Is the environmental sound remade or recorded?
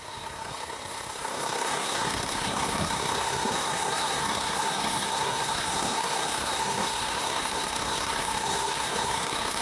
remade